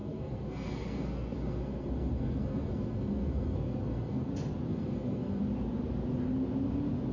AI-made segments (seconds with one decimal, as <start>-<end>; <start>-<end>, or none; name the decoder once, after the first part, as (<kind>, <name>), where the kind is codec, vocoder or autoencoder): 0.0-4.3 (codec, SNAC); 4.7-5.4